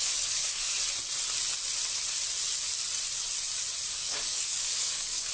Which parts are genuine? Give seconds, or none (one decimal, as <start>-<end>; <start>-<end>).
0.7-3.9